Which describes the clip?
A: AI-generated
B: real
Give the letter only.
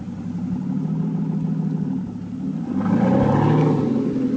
B